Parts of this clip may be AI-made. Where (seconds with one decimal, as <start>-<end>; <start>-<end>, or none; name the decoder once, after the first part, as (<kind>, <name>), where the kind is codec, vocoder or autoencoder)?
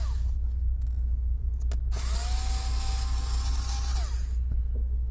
none